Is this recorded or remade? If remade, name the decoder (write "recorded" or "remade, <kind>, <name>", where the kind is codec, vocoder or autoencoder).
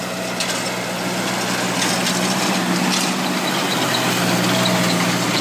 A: recorded